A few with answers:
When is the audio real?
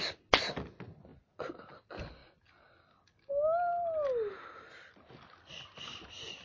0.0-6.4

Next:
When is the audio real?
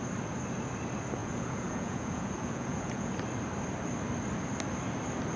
0.0-1.2; 3.1-5.4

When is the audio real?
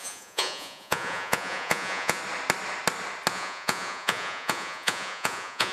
2.2-3.3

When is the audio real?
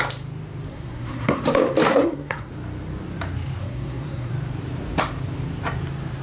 0.0-0.7; 1.4-1.9; 2.5-3.6; 4.3-6.2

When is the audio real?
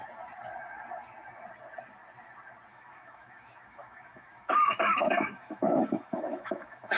0.0-2.7